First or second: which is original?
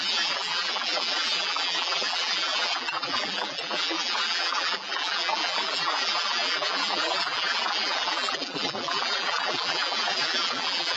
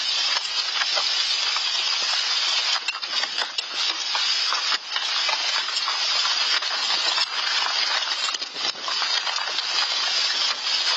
second